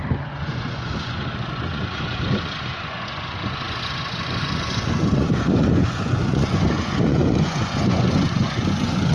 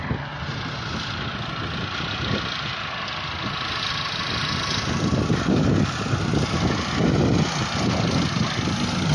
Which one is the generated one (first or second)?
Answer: first